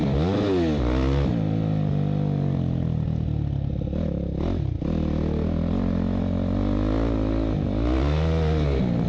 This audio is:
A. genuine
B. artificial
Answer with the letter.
A